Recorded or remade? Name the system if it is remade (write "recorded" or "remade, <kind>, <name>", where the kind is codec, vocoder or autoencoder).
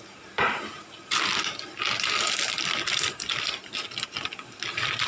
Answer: recorded